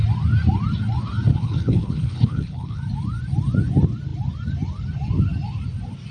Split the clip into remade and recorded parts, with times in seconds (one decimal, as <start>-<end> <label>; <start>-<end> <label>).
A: 0.0-1.3 recorded; 1.3-2.8 remade; 2.8-6.1 recorded